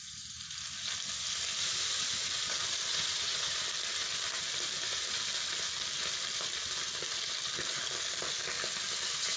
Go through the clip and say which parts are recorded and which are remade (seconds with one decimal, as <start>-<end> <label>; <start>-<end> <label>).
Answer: 0.0-2.9 recorded; 2.9-3.6 remade; 3.6-9.4 recorded